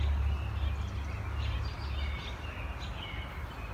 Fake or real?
real